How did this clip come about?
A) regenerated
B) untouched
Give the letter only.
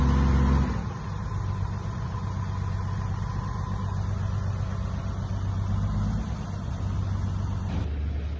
B